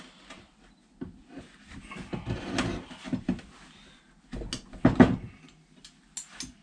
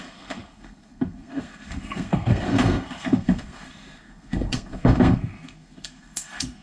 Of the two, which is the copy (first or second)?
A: second